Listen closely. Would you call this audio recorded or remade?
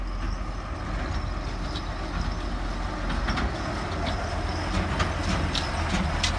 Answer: recorded